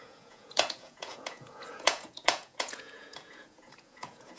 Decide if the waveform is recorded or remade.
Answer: remade